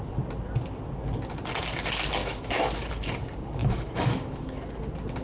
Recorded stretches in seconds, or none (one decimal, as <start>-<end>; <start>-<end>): 0.0-2.2; 2.9-3.6; 4.6-5.2